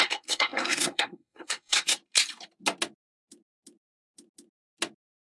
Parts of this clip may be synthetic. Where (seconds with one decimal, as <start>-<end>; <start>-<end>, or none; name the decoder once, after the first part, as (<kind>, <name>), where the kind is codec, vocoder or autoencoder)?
0.0-2.0 (codec, SNAC)